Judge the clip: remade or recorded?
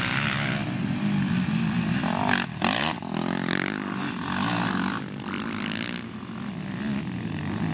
recorded